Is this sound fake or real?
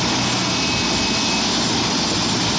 real